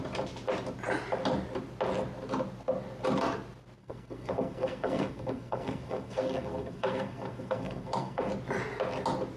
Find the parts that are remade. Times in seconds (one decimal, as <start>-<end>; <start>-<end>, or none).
3.8-8.3